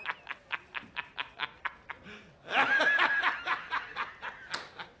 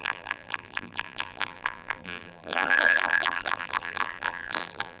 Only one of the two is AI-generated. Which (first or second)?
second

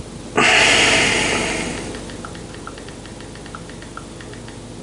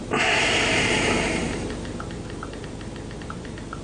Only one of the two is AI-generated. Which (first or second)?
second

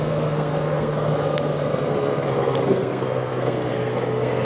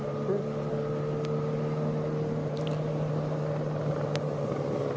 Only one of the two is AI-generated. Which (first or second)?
first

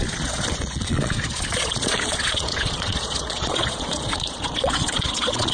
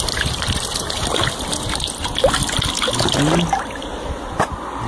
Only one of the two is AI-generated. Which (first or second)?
first